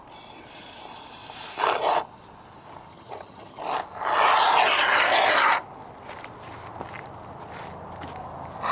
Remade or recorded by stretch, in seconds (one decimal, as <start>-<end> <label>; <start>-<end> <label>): 0.0-2.9 recorded; 2.9-3.6 remade; 3.6-8.7 recorded